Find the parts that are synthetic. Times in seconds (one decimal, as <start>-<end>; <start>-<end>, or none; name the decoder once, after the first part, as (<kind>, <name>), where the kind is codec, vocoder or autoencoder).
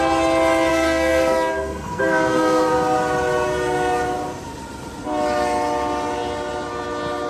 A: 0.7-2.7 (codec, SNAC)